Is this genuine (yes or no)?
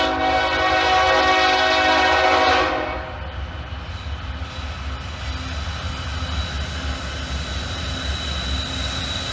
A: yes